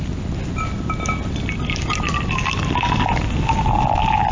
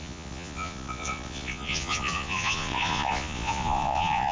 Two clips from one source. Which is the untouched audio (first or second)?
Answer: first